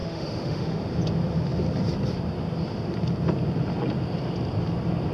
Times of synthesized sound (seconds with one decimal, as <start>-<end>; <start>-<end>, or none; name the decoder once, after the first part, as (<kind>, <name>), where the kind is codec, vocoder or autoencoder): 0.0-0.8 (autoencoder, DAC-VAE)